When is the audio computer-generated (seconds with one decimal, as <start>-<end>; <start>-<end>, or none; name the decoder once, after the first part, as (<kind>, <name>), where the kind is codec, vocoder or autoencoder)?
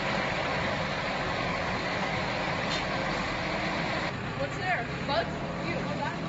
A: 0.6-2.5 (codec, DAC)